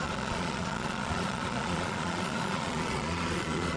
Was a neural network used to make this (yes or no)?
yes